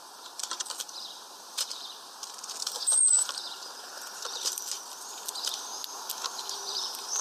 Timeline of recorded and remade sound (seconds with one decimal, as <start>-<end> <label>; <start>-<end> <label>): 0.0-5.7 remade; 5.7-6.5 recorded; 6.5-7.2 remade